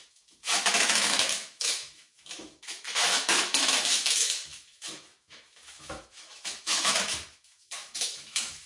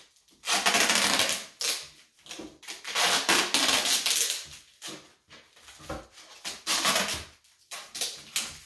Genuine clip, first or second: second